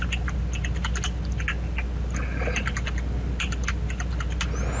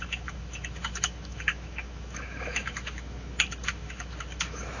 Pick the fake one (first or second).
second